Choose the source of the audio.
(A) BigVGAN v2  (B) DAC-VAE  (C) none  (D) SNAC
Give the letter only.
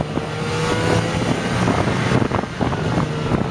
C